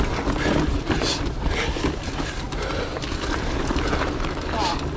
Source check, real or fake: real